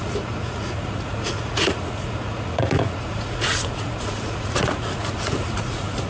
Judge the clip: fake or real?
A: fake